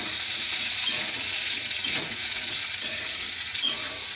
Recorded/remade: remade